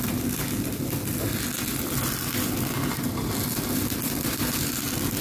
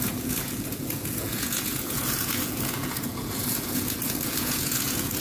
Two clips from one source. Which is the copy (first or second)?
second